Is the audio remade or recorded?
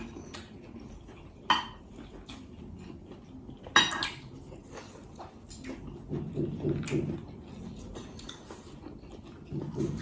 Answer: recorded